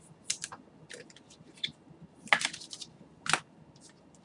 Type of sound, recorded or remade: recorded